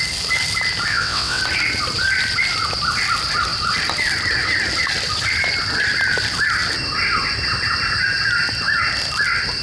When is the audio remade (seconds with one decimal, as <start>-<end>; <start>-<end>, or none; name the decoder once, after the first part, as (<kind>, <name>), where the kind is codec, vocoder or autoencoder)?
0.9-1.4 (vocoder, WaveNeXt)